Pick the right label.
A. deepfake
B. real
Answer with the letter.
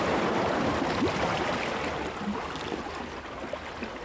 B